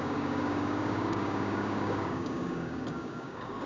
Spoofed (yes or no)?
yes